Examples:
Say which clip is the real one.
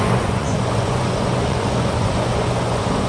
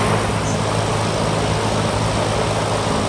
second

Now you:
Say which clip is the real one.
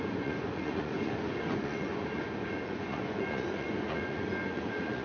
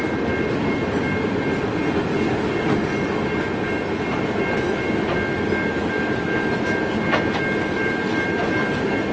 second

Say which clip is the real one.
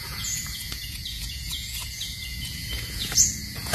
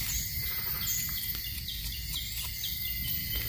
second